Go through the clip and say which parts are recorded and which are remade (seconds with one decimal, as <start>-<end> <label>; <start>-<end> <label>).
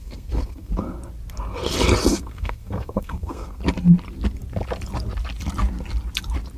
0.0-0.7 remade; 0.7-2.1 recorded; 2.1-3.6 remade; 3.6-6.6 recorded